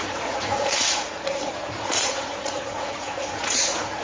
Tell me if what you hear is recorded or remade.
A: remade